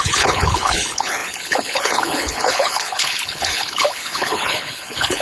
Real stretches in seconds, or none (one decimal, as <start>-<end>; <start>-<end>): none